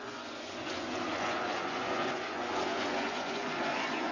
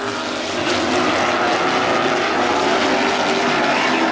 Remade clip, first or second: first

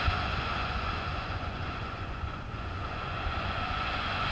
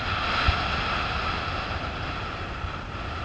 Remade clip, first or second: first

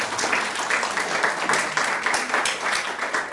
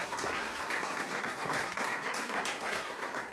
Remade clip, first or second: second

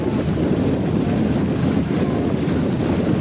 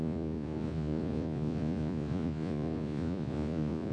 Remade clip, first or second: second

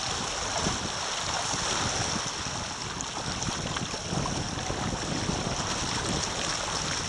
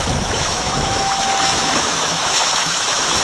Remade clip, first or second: second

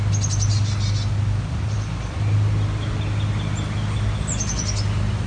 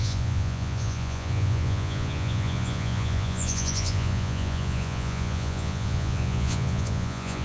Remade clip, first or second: second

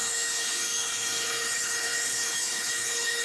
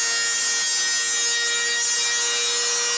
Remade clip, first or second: first